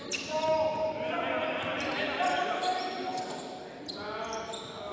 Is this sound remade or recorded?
recorded